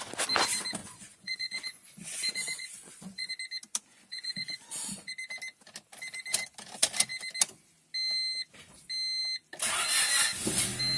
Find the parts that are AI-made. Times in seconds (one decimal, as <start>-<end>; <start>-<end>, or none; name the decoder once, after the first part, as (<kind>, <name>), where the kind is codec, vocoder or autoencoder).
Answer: 0.8-3.3 (vocoder, Vocos); 3.9-5.1